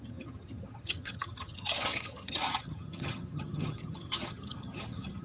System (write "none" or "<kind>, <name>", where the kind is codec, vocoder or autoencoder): vocoder, HiFi-GAN